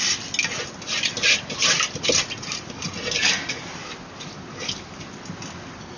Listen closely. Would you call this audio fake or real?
real